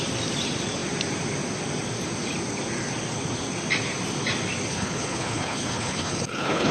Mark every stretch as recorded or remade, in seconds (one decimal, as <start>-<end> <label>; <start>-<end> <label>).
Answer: 0.0-4.7 recorded; 4.7-6.7 remade